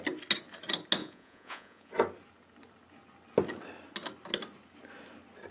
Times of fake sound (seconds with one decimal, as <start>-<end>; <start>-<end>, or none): 1.0-1.9